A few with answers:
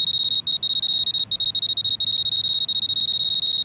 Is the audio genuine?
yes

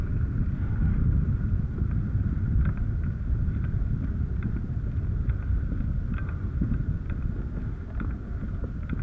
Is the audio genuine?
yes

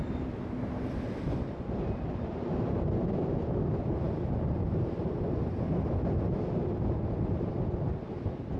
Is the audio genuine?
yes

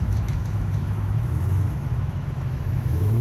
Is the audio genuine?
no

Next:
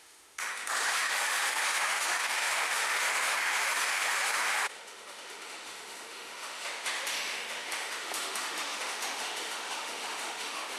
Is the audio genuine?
no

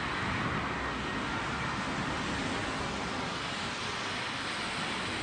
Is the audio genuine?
yes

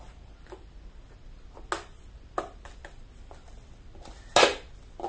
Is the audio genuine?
yes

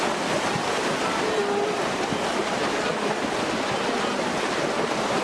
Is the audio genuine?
yes